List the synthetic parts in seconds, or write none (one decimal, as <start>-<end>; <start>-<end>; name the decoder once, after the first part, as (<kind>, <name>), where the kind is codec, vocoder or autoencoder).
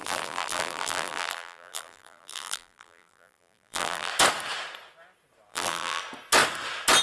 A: 0.0-4.1 (vocoder, BigVGAN v2); 5.5-6.0